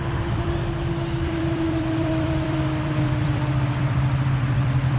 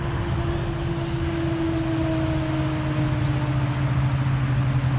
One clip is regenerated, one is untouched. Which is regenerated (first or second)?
first